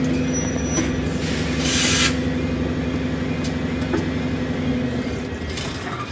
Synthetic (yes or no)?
no